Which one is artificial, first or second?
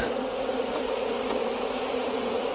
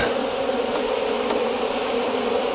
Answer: first